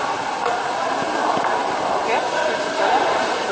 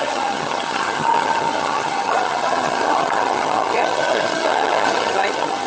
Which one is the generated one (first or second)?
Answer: second